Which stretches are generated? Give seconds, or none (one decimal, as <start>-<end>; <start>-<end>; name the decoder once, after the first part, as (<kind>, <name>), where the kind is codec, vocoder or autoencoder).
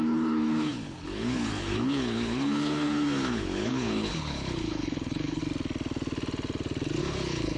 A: 0.0-5.4 (codec, HILCodec); 7.0-7.6